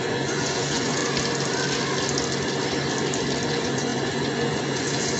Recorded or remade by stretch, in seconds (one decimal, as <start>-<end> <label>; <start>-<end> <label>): 0.0-1.0 remade; 1.0-3.5 recorded; 3.5-5.2 remade